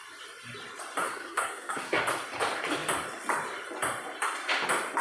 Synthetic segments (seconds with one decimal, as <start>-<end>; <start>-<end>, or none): 1.0-2.0